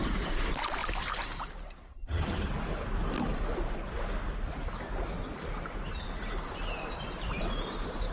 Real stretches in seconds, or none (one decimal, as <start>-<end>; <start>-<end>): 0.0-1.9; 2.5-8.1

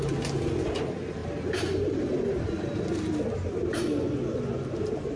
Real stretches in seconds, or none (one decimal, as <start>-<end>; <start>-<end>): 0.0-5.2

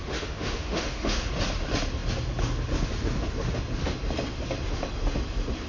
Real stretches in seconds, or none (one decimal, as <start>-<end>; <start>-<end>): 1.3-5.7

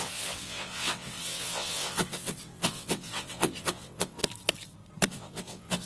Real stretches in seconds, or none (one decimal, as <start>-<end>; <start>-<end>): 4.2-5.1

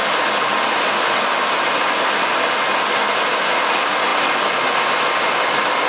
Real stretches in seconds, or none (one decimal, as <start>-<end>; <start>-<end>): 0.0-5.9

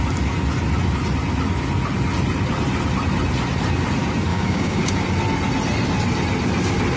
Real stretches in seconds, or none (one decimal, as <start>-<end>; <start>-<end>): 0.0-4.3; 4.9-7.0

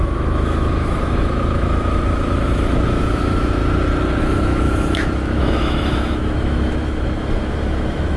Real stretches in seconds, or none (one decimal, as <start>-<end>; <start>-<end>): 3.6-4.2

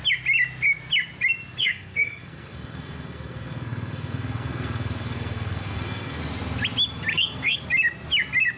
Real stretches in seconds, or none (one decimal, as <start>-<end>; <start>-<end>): 0.0-1.6; 6.2-7.1; 7.6-8.6